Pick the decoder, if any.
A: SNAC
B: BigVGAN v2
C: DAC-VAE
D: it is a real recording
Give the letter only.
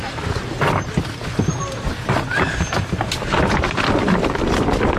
D